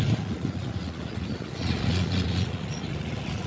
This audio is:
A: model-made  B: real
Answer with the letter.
A